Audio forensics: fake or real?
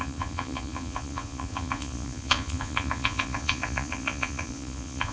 fake